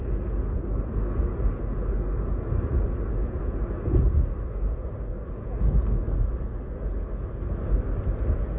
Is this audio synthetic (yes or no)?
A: no